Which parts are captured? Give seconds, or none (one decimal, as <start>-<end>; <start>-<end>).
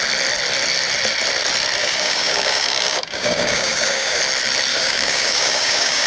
0.0-1.8; 4.2-4.7